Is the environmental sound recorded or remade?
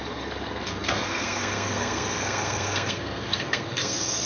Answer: remade